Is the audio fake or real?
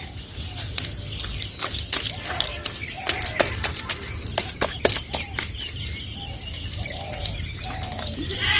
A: real